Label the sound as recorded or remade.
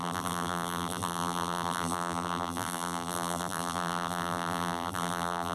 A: remade